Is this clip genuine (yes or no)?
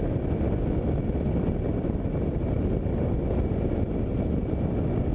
yes